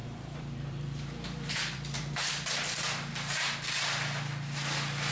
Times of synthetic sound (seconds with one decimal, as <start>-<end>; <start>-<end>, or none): 0.0-3.1